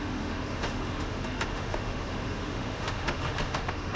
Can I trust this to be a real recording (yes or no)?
no